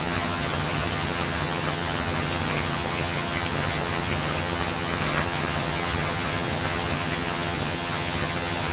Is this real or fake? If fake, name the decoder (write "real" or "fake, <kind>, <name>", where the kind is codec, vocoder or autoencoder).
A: fake, vocoder, HiFi-GAN